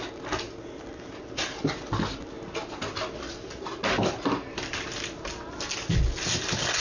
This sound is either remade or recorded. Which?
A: recorded